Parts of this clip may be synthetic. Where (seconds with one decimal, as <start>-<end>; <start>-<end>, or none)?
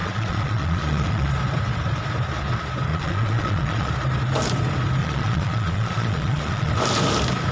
0.0-1.3; 2.9-3.9; 5.0-6.7